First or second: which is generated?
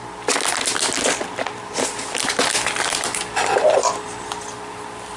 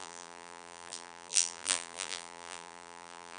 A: second